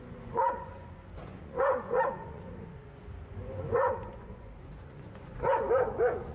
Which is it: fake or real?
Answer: fake